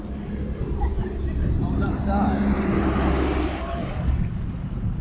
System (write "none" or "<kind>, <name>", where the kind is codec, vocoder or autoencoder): none